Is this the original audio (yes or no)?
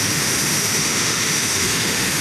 no